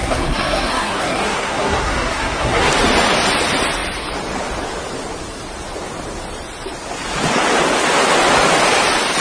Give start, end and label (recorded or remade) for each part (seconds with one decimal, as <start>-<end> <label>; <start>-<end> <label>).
0.0-2.7 remade; 2.7-9.2 recorded